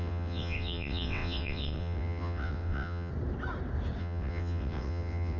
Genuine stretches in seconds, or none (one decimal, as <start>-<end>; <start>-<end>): 3.1-4.0